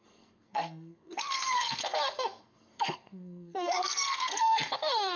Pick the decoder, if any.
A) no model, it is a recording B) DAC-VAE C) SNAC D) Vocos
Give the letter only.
C